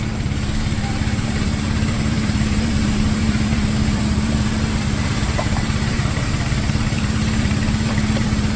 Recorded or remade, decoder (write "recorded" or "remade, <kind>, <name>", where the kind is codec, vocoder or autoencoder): remade, vocoder, BigVGAN v2